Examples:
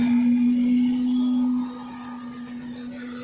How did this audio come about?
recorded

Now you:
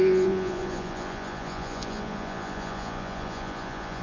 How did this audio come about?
remade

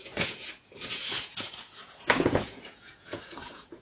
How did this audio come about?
remade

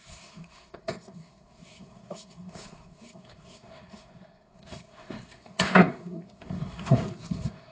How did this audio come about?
remade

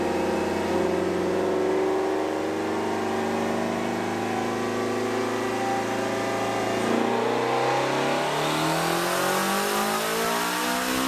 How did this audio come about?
recorded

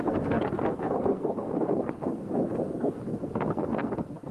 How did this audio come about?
remade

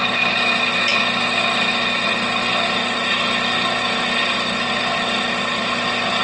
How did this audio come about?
recorded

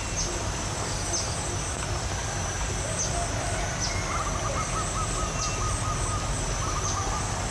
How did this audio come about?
recorded